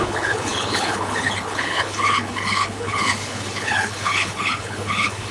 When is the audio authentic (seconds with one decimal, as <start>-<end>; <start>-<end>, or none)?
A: none